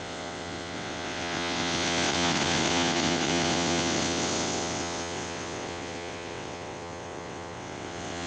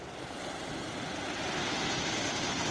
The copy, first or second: first